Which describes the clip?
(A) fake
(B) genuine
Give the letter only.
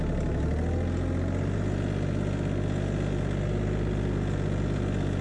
B